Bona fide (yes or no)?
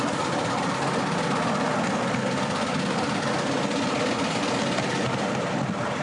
yes